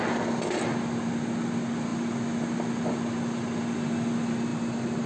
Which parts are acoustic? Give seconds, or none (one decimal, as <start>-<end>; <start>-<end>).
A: 0.0-5.1